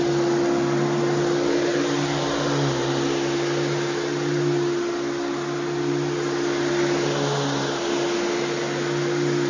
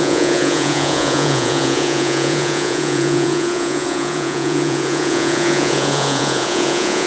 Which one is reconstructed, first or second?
second